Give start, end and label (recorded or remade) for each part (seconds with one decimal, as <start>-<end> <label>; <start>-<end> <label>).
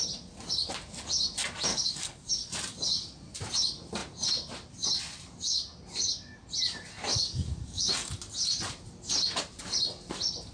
0.0-1.7 recorded; 1.7-2.3 remade; 2.3-7.1 recorded; 7.1-8.1 remade; 8.1-10.5 recorded